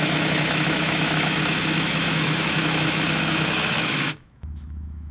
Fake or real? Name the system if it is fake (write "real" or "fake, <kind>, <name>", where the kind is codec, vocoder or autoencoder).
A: fake, autoencoder, DAC-VAE